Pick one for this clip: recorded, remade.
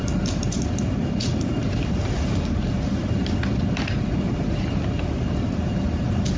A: recorded